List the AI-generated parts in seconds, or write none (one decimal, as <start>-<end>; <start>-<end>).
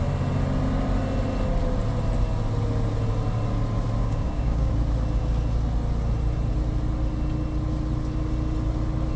4.0-4.7